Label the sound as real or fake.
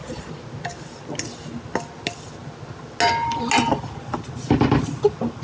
real